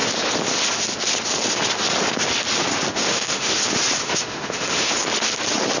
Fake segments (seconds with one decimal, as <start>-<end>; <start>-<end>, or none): 2.9-3.6; 4.0-4.9